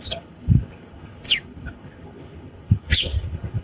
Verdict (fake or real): fake